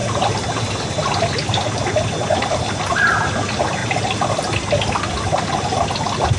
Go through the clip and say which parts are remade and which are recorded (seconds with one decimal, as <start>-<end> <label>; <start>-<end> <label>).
0.0-6.4 recorded